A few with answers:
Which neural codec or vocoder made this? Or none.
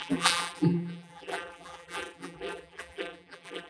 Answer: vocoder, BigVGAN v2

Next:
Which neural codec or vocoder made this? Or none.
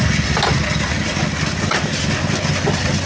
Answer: none